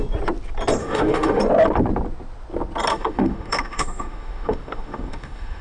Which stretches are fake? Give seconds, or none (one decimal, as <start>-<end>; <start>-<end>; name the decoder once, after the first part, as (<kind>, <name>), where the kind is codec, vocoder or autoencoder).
0.8-1.4 (autoencoder, DAC-VAE); 2.9-5.6